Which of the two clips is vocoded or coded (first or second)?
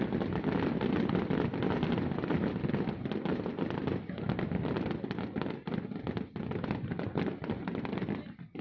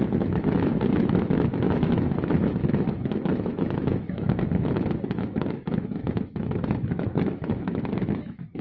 second